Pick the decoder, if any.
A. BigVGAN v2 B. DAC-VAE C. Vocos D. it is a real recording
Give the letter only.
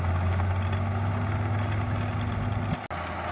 D